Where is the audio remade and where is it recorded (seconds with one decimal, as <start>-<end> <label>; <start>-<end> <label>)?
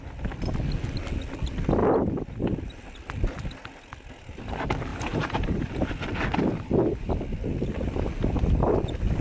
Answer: 0.0-4.9 recorded; 4.9-5.9 remade; 5.9-9.2 recorded